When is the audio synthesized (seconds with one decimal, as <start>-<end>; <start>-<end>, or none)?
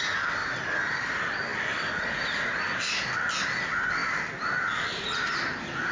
none